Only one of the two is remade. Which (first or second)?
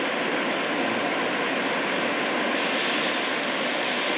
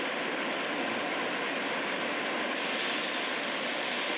second